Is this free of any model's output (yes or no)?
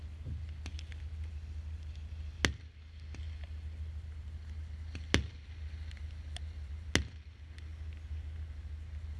yes